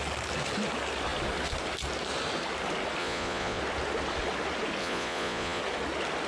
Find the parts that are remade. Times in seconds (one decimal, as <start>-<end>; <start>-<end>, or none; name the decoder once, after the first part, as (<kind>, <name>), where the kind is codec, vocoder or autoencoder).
3.0-3.6 (vocoder, Vocos); 4.8-5.6